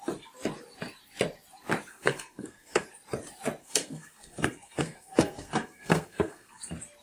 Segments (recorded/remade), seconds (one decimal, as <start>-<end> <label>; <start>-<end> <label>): 0.0-1.9 recorded; 1.9-2.9 remade; 2.9-3.6 recorded; 3.6-6.6 remade; 6.6-7.0 recorded